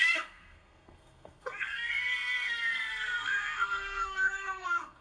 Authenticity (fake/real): fake